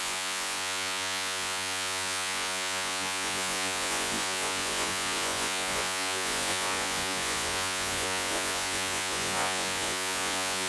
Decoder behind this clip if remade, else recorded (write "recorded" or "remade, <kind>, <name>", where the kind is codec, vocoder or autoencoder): remade, vocoder, Vocos